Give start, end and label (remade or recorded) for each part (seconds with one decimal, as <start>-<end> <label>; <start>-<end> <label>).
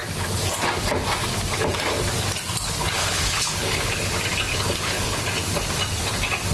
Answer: 0.0-3.0 recorded; 3.0-4.0 remade; 4.0-4.5 recorded; 4.5-5.2 remade; 5.2-6.5 recorded